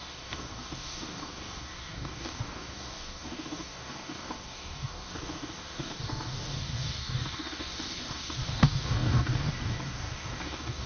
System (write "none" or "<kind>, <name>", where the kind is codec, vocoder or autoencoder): codec, DAC